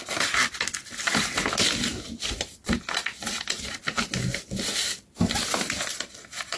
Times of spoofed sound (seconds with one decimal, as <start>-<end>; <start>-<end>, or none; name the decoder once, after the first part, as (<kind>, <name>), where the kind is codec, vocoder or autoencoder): none